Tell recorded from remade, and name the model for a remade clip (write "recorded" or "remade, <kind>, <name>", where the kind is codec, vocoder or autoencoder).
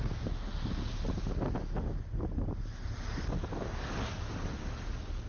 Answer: recorded